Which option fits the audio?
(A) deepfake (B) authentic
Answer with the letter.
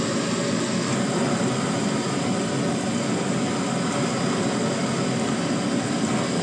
B